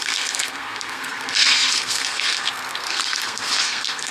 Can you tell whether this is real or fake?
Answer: fake